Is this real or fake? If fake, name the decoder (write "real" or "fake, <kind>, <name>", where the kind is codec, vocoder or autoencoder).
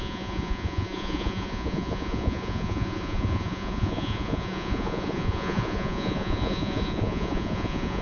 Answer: fake, vocoder, Vocos